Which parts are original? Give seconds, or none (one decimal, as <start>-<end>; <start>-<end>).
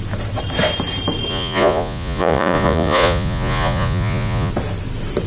0.0-1.3; 4.5-5.3